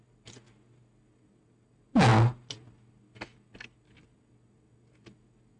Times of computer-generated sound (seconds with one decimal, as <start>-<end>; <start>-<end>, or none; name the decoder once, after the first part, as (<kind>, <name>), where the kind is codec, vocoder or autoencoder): none